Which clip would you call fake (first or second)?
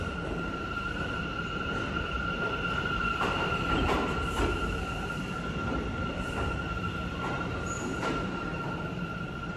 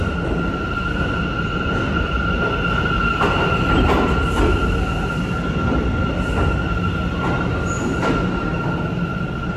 first